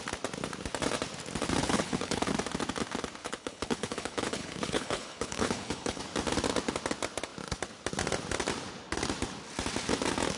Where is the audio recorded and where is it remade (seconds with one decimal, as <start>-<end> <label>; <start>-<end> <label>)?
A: 0.0-1.6 recorded; 1.6-2.3 remade; 2.3-3.2 recorded; 3.2-6.0 remade; 6.0-10.4 recorded